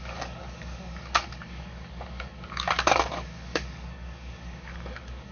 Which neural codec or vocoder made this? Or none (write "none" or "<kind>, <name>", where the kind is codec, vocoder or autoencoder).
codec, DAC